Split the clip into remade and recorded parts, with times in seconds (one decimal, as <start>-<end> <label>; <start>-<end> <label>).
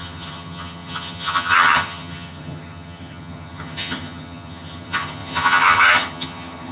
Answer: 0.0-6.7 remade